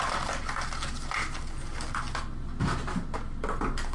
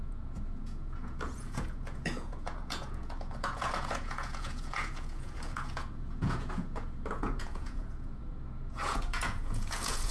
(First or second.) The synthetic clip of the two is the second